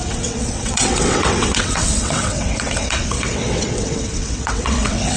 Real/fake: fake